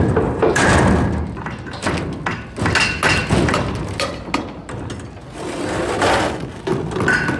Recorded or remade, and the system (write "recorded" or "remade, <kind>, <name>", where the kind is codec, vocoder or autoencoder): recorded